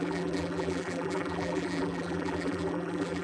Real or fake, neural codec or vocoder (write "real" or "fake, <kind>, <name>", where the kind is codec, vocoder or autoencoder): fake, vocoder, BigVGAN v2